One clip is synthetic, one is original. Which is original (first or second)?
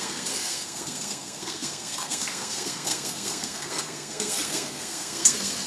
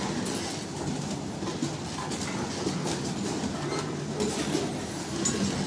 second